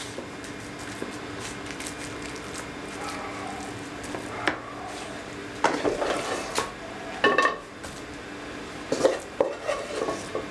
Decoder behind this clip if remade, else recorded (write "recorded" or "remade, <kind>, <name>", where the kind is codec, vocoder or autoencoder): recorded